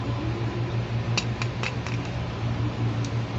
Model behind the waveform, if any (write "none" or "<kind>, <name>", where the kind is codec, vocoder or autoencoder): none